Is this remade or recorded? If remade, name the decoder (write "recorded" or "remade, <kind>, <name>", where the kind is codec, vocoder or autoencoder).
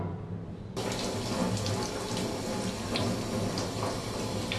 recorded